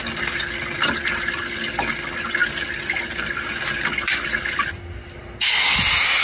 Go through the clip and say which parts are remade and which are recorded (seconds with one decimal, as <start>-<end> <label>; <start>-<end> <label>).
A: 0.0-6.2 recorded

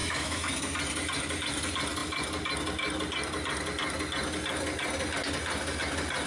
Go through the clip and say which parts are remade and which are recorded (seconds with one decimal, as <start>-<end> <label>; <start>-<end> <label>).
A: 0.0-0.5 remade; 0.5-6.3 recorded

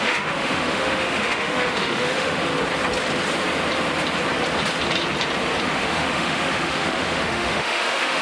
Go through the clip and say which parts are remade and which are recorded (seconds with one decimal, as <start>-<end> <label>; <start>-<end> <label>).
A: 0.0-2.5 remade; 2.5-5.6 recorded; 5.6-8.2 remade

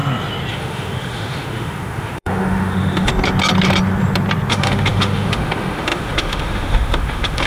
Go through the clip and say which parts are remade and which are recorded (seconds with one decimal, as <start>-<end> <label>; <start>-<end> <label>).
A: 0.0-0.5 recorded; 0.5-3.1 remade; 3.1-4.5 recorded; 4.5-7.5 remade

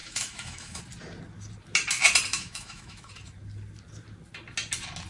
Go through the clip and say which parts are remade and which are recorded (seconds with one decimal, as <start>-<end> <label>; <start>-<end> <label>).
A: 0.0-0.8 remade; 0.8-2.3 recorded; 2.3-3.1 remade; 3.1-5.1 recorded

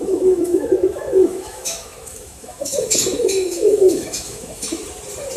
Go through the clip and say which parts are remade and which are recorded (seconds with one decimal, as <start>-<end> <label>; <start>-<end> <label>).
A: 0.0-4.8 remade; 4.8-5.4 recorded